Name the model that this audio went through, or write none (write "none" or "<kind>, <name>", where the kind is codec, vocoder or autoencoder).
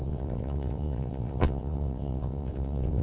vocoder, WaveNeXt